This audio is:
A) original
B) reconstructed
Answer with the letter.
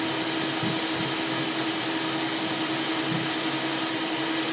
A